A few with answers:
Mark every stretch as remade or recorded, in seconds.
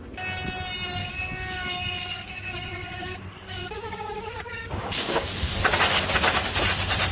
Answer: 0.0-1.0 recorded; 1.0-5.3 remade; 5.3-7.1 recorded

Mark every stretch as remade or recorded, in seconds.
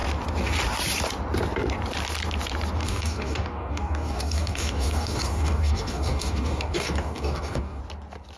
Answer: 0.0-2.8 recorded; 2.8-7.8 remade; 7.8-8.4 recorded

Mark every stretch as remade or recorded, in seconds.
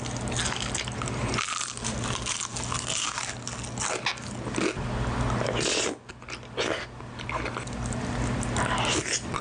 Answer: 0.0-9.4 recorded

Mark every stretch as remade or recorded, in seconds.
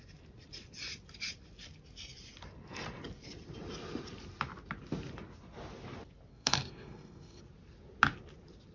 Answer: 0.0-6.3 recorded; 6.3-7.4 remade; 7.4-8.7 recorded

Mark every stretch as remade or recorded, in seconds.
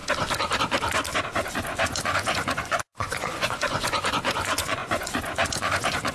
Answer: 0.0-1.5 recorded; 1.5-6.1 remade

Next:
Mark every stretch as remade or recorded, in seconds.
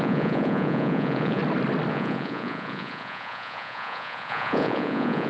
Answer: 0.0-1.4 remade; 1.4-1.9 recorded; 1.9-5.3 remade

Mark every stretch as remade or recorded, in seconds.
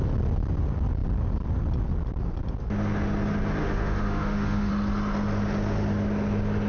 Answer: 0.0-3.6 recorded; 3.6-4.7 remade; 4.7-6.7 recorded